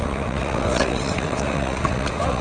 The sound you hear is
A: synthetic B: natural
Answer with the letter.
A